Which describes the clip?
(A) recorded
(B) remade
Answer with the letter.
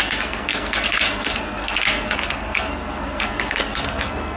B